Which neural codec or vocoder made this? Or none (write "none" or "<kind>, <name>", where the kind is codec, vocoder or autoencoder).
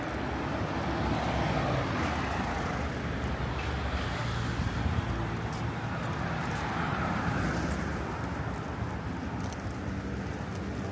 none